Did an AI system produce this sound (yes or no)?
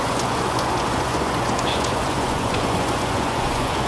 yes